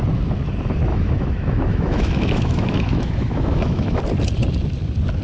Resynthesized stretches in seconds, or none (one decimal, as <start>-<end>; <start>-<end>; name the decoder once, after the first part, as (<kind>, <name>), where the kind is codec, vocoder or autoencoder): 0.9-4.0 (autoencoder, DAC-VAE)